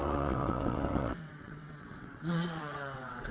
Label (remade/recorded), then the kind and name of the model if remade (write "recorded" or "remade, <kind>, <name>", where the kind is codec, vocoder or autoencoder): remade, vocoder, WaveNeXt